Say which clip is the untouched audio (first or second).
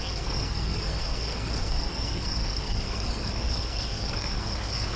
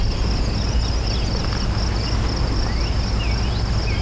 second